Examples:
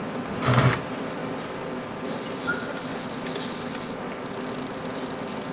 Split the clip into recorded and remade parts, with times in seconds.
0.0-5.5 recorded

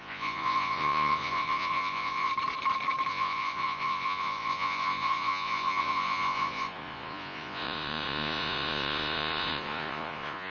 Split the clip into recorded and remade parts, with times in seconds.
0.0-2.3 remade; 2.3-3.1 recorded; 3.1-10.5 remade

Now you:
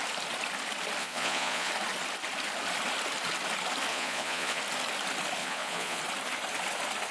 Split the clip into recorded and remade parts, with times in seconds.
0.0-1.0 recorded; 1.0-1.7 remade; 1.7-3.9 recorded; 3.9-4.6 remade; 4.6-5.4 recorded; 5.4-6.0 remade; 6.0-7.1 recorded

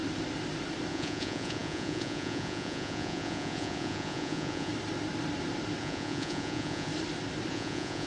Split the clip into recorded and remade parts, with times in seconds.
0.0-0.9 recorded; 0.9-4.7 remade; 4.7-5.8 recorded; 5.8-6.9 remade; 6.9-7.5 recorded; 7.5-8.1 remade